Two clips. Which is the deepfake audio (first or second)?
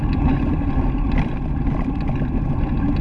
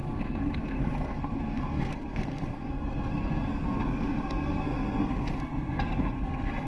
second